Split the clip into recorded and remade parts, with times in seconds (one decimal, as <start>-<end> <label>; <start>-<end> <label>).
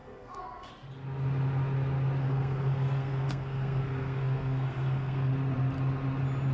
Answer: 0.0-0.7 remade; 0.7-2.2 recorded; 2.2-5.3 remade; 5.3-6.5 recorded